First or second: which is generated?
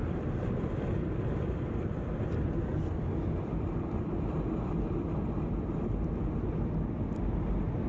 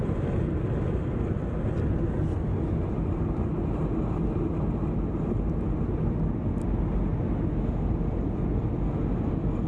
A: first